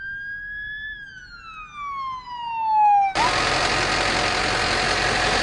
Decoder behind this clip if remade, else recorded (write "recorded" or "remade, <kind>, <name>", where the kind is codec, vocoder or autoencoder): recorded